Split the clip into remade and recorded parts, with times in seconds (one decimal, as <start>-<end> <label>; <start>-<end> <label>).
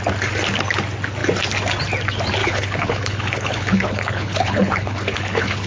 0.0-2.4 recorded; 2.4-5.7 remade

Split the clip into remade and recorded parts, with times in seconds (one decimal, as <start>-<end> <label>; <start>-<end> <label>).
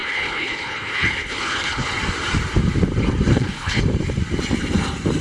0.0-1.9 remade; 1.9-3.3 recorded; 3.3-3.8 remade; 3.8-5.2 recorded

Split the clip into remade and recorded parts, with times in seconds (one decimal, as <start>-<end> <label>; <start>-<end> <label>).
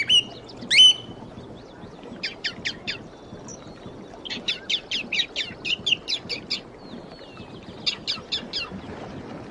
0.0-9.5 recorded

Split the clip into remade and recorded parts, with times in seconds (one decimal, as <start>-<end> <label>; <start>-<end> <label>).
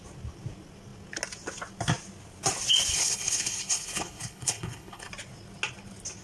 0.0-2.9 recorded; 2.9-5.1 remade; 5.1-6.2 recorded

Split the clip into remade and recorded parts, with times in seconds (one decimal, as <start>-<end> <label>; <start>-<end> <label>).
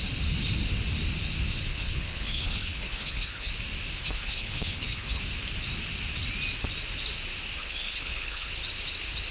0.0-1.7 recorded; 1.7-3.5 remade; 3.5-4.0 recorded; 4.0-5.2 remade; 5.2-7.6 recorded; 7.6-8.5 remade; 8.5-9.3 recorded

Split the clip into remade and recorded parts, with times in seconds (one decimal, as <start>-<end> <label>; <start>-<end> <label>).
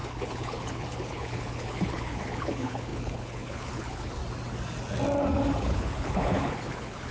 0.0-4.2 remade; 4.2-5.6 recorded; 5.6-7.1 remade